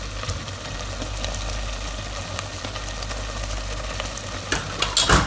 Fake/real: real